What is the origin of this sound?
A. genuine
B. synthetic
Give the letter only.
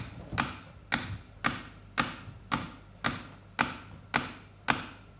A